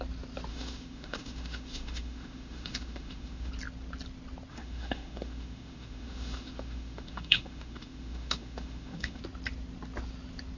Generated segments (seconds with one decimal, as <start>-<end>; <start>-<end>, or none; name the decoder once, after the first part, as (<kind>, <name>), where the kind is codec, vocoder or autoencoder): 0.5-3.5 (autoencoder, DAC-VAE); 4.5-9.2